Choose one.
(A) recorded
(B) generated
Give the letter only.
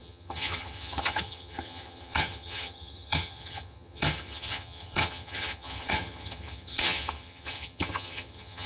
B